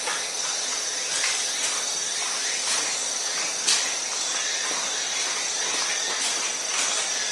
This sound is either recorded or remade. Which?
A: recorded